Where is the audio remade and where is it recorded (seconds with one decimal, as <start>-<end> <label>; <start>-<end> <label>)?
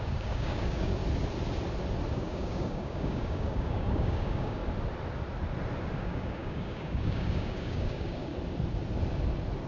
0.0-1.0 remade; 1.0-2.1 recorded; 2.1-4.6 remade; 4.6-6.0 recorded; 6.0-8.3 remade; 8.3-9.7 recorded